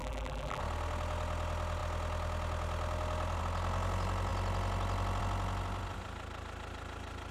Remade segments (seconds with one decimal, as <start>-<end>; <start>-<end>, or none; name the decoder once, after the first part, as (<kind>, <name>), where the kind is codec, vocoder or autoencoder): 0.0-0.6 (vocoder, BigVGAN v2)